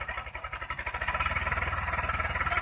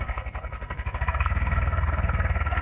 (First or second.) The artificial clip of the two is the second